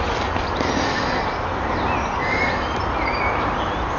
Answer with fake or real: real